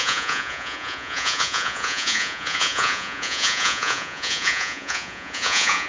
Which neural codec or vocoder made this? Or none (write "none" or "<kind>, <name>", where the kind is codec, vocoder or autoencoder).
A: vocoder, Vocos